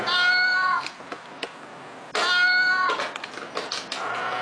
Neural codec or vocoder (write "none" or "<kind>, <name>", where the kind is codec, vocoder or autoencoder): none